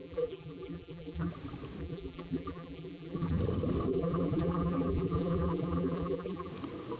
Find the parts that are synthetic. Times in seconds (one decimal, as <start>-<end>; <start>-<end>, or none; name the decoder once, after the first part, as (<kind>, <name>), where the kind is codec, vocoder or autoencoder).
0.0-1.3 (vocoder, BigVGAN v2); 1.8-3.4; 3.9-6.5